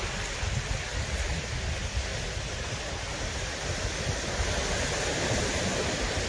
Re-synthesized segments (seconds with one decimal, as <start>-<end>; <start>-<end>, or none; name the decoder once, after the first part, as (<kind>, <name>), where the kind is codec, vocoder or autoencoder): none

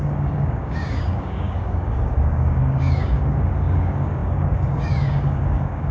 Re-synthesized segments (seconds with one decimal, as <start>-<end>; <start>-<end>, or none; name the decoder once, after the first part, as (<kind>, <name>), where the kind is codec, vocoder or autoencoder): 0.0-5.9 (codec, DAC)